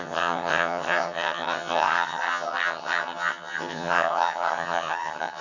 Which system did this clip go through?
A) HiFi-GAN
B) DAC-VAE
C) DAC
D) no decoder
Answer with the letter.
A